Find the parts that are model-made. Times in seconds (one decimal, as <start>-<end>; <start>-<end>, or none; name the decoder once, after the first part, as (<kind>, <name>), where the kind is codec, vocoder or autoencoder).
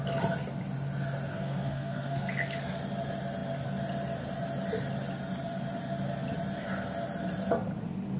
1.3-2.3 (codec, SNAC)